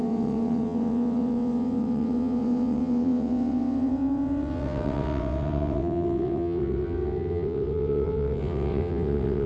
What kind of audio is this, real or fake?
fake